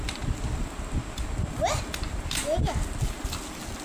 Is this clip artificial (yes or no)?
no